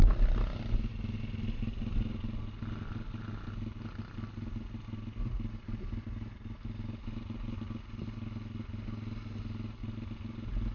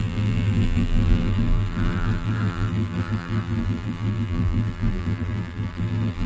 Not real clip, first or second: second